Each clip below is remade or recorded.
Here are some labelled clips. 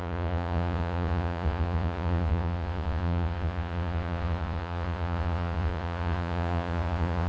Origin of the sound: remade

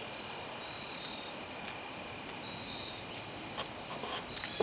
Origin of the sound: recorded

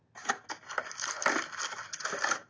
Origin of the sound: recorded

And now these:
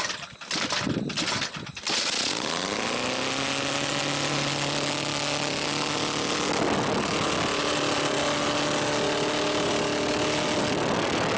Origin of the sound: recorded